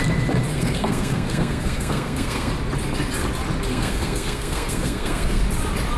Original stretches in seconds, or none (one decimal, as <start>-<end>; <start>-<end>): 0.0-0.5; 2.5-3.7; 5.4-6.0